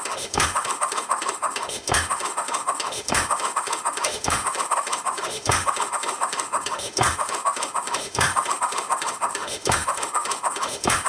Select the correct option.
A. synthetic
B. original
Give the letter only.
A